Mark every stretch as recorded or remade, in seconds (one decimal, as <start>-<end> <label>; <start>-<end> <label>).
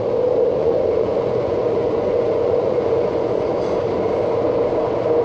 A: 0.0-0.6 recorded; 0.6-3.5 remade; 3.5-5.2 recorded